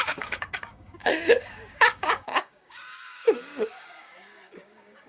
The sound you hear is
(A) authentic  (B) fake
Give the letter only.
B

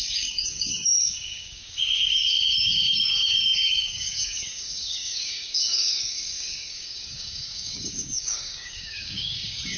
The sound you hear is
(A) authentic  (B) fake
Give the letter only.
B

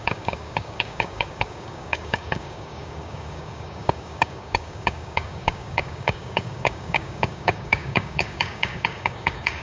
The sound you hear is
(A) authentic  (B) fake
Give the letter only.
B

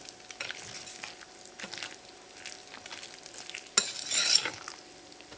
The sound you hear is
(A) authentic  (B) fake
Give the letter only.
A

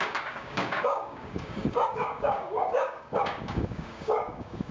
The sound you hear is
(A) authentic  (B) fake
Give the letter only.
B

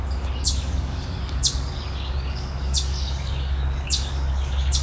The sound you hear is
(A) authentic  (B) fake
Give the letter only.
B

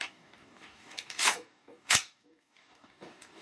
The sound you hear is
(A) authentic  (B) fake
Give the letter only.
B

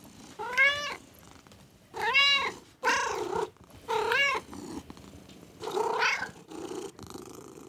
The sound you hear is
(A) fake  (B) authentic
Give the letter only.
B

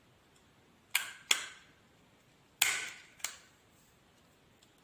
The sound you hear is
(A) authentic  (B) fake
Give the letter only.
A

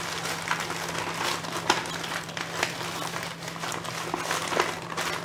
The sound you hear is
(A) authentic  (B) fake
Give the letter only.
A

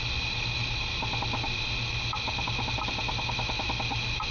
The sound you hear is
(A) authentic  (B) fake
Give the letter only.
A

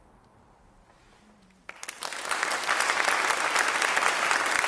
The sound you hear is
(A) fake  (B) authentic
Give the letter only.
B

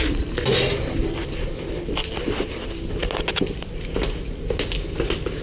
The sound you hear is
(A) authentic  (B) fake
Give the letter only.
A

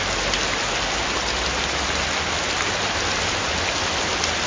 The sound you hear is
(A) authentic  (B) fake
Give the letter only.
A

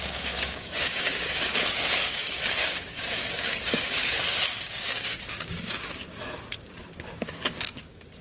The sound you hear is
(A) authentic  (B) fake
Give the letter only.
B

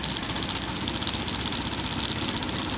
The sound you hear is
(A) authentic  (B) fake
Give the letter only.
A